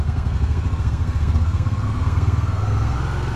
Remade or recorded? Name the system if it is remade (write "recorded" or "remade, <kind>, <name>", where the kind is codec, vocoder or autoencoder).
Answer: remade, codec, SNAC